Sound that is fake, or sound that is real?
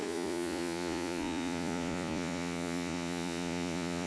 fake